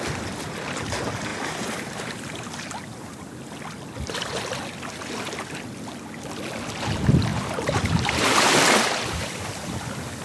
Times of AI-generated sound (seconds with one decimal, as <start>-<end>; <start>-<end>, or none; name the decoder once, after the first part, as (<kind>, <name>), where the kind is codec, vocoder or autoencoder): 1.3-2.8 (vocoder, BigVGAN v2); 7.3-9.5